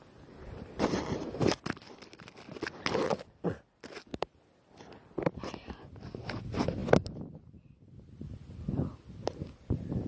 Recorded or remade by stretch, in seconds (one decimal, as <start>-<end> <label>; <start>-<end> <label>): 0.0-10.1 recorded